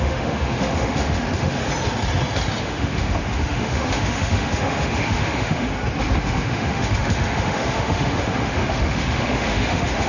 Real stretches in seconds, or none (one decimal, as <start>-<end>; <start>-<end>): 1.6-2.6; 5.7-6.2